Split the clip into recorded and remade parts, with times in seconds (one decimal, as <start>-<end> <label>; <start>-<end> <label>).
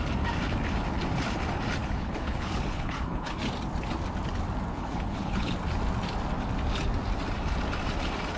0.0-1.8 recorded; 1.8-3.4 remade; 3.4-4.7 recorded; 4.7-5.5 remade; 5.5-8.4 recorded